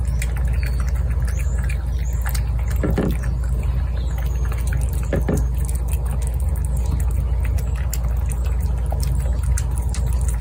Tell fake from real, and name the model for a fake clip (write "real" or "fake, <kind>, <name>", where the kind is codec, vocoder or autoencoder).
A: real